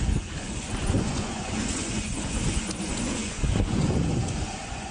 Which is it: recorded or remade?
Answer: remade